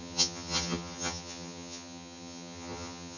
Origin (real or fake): fake